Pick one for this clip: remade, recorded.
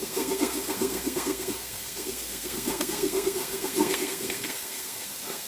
remade